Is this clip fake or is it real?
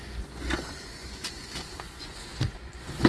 fake